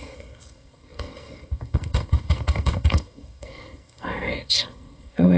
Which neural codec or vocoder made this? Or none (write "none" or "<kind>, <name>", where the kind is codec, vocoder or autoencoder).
codec, SNAC